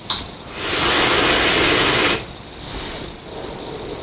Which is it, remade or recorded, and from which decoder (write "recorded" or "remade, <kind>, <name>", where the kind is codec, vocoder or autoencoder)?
recorded